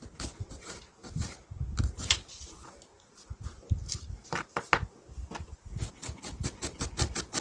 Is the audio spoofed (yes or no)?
no